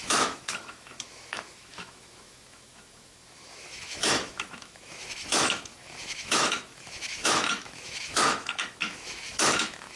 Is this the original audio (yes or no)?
no